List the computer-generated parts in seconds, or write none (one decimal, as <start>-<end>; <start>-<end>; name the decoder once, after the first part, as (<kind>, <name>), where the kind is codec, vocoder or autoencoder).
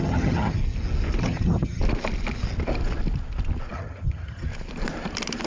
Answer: 0.0-0.6 (vocoder, HiFi-GAN); 1.2-1.8; 3.7-4.5